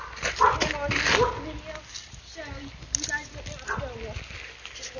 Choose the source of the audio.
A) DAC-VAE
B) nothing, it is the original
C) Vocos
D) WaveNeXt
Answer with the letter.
B